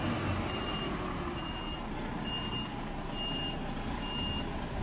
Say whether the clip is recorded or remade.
recorded